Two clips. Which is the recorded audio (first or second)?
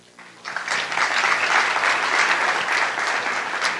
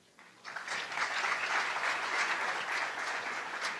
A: first